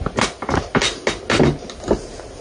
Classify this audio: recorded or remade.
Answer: recorded